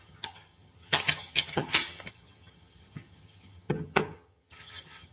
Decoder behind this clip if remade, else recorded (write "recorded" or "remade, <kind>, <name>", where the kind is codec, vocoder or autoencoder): remade, vocoder, HiFi-GAN